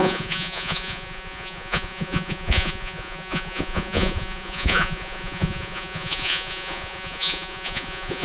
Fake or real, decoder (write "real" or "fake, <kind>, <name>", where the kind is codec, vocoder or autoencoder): fake, vocoder, Vocos